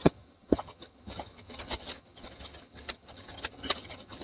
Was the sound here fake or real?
fake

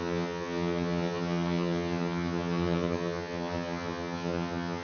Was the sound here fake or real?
fake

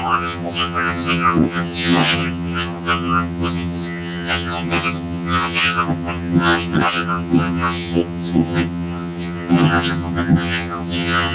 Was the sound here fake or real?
fake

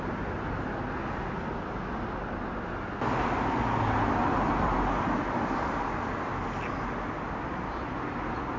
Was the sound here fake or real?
real